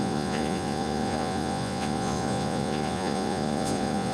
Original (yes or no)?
no